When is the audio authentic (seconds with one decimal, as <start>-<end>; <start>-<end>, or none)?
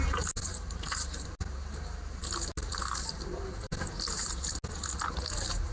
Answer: 0.0-5.7